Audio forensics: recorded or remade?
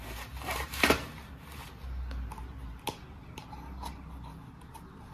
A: recorded